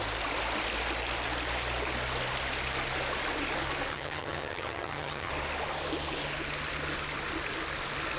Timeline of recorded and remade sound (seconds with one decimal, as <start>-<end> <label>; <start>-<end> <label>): 0.0-3.9 recorded; 3.9-5.3 remade; 5.3-8.2 recorded